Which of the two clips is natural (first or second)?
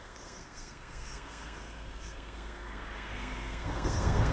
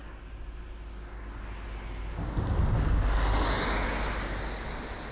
second